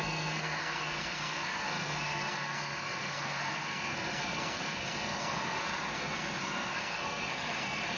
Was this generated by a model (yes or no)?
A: yes